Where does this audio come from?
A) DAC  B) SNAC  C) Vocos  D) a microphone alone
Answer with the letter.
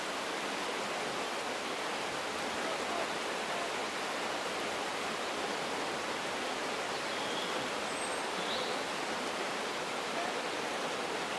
D